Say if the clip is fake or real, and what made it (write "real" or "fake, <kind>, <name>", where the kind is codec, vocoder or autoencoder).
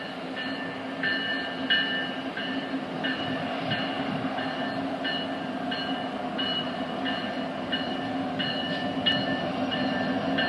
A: real